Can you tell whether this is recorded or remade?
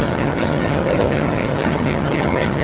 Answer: remade